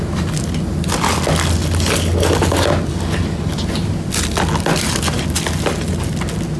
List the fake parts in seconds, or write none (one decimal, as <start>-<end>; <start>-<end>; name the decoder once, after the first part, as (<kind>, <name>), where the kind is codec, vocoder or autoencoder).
none